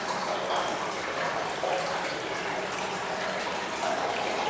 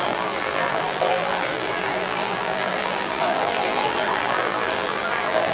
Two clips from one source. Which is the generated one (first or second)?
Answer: second